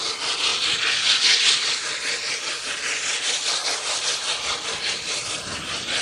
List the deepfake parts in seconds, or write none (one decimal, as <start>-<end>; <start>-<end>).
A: none